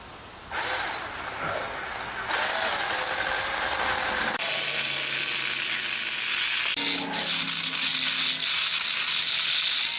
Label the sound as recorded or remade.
recorded